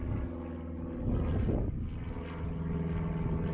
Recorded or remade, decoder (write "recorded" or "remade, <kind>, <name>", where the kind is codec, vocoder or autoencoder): recorded